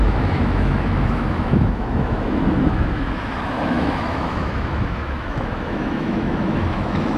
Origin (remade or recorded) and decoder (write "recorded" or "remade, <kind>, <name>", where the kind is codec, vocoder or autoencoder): remade, autoencoder, DAC-VAE